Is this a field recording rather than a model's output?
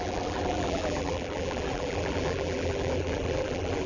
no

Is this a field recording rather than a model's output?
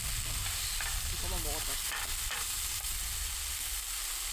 yes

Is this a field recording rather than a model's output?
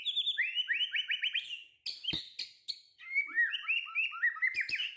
yes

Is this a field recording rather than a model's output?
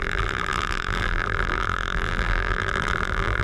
no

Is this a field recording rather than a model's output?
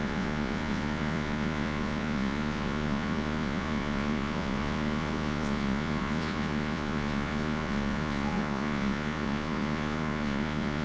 no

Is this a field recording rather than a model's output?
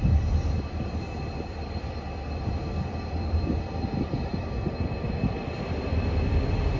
yes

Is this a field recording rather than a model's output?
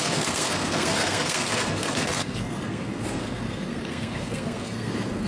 no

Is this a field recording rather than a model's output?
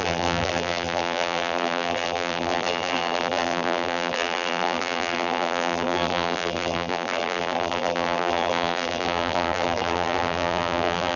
no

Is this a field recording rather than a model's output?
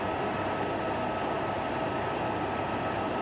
yes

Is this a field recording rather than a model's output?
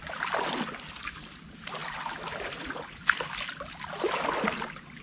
yes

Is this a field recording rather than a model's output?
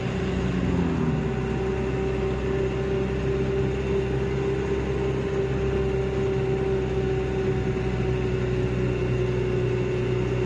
yes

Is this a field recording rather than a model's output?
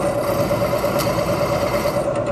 yes